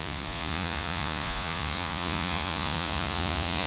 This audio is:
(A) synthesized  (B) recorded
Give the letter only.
A